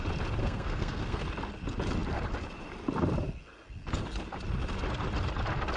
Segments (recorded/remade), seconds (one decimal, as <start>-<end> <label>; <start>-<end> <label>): 0.0-0.4 recorded; 0.4-1.2 remade; 1.2-5.8 recorded